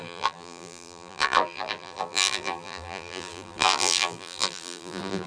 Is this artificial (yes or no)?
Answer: yes